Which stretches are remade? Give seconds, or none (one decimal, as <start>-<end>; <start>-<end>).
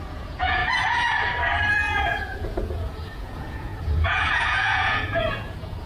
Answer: 0.0-0.6; 1.7-5.9